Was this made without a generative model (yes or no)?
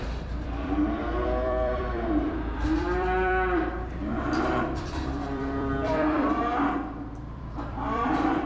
no